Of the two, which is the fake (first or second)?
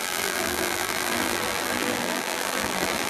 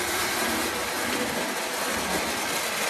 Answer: first